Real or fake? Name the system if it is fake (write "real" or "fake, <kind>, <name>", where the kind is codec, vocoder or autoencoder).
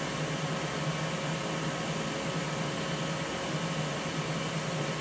real